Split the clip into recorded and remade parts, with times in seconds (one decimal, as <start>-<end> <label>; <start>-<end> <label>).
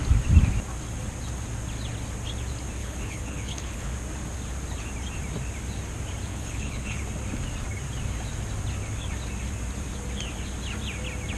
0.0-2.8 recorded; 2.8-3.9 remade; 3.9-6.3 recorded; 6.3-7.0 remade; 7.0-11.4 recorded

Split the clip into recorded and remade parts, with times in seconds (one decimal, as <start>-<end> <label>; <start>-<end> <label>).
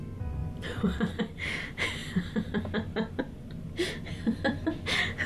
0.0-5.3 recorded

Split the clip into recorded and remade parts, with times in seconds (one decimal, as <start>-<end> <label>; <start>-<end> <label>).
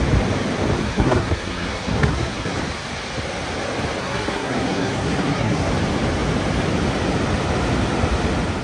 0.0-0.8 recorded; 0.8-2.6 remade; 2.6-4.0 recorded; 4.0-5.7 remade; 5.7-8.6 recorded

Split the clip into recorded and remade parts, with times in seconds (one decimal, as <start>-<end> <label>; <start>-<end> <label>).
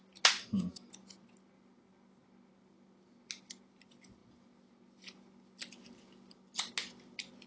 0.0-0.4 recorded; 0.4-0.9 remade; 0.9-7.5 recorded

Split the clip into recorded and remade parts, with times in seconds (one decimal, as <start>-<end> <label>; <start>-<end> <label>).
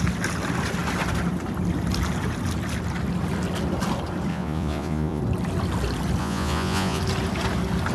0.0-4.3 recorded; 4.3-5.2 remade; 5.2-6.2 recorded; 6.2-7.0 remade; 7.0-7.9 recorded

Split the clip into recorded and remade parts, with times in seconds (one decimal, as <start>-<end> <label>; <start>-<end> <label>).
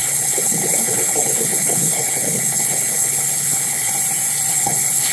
0.0-3.9 remade; 3.9-4.5 recorded; 4.5-5.1 remade